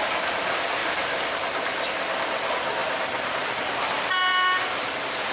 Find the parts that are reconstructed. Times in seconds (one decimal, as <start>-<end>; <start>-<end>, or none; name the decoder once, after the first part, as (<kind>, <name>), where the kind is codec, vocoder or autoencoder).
0.8-1.9 (vocoder, BigVGAN v2); 2.8-3.7